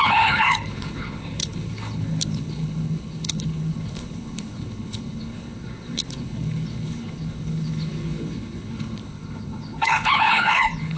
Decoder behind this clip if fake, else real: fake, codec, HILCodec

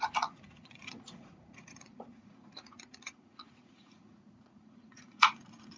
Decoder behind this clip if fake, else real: fake, vocoder, Vocos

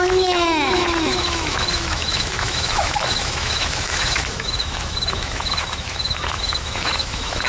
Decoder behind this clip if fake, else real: fake, autoencoder, DAC-VAE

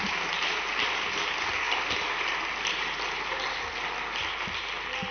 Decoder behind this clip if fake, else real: real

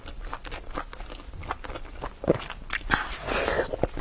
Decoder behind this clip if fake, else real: real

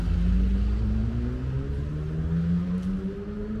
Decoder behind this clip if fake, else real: real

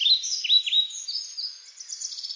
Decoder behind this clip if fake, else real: real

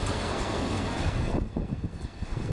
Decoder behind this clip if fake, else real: fake, codec, SNAC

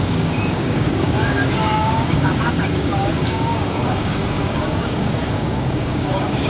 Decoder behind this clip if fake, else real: fake, codec, DAC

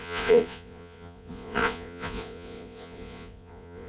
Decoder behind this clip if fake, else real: fake, vocoder, Vocos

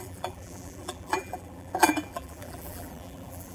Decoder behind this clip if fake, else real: fake, vocoder, BigVGAN v2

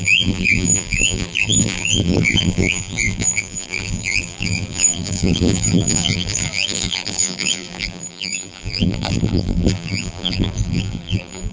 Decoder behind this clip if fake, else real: fake, vocoder, BigVGAN v2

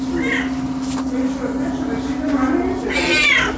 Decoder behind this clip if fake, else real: real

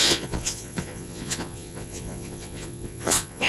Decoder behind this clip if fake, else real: fake, vocoder, Vocos